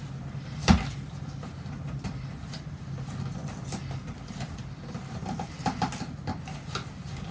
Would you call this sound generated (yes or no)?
no